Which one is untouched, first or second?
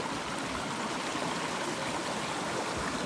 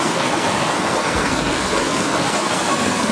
first